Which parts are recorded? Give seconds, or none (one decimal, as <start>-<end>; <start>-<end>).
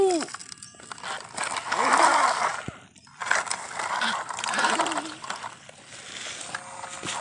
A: 0.0-7.2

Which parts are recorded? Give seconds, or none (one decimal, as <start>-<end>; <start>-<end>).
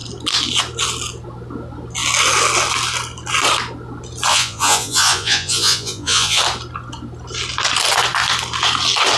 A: 0.0-4.3; 6.4-9.2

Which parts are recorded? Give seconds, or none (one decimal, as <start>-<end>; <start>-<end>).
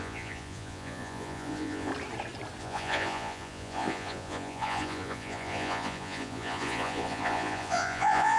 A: 1.9-2.6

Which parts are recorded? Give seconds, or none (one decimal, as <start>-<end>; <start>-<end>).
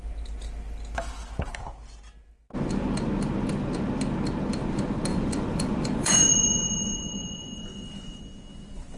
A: 0.0-5.1; 8.2-9.0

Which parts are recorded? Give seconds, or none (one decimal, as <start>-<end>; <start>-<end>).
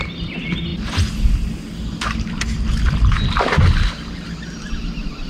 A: 0.0-5.3